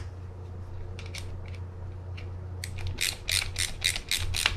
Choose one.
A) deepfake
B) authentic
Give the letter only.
B